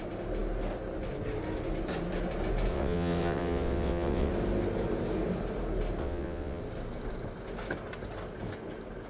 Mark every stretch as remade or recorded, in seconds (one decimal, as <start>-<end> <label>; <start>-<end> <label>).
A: 0.0-2.7 recorded; 2.7-4.3 remade; 4.3-6.0 recorded; 6.0-6.6 remade; 6.6-9.1 recorded